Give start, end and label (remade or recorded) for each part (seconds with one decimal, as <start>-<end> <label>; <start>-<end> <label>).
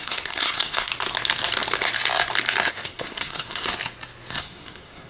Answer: 0.0-0.9 remade; 0.9-2.7 recorded; 2.7-3.7 remade; 3.7-4.3 recorded; 4.3-5.1 remade